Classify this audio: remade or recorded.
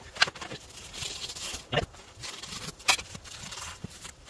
remade